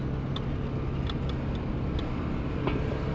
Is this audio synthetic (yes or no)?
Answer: no